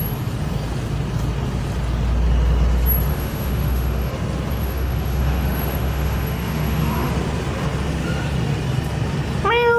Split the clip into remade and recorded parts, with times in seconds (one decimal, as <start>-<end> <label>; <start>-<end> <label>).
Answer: 0.0-3.1 recorded; 3.1-4.1 remade; 4.1-4.6 recorded; 4.6-7.1 remade; 7.1-9.8 recorded